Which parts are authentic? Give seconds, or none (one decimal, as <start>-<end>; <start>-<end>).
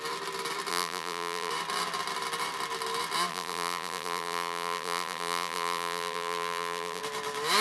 0.0-0.7; 1.5-3.3; 7.0-7.6